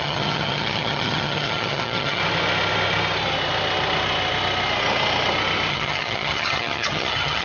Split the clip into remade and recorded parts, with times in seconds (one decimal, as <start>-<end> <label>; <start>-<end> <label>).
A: 0.0-2.2 remade; 2.2-5.7 recorded; 5.7-7.4 remade